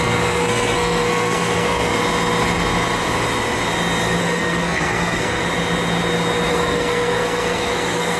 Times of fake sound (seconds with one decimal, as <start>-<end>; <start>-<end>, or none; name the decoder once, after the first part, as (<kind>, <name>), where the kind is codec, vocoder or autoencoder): 0.0-1.9 (codec, SNAC); 4.2-5.4; 6.5-8.2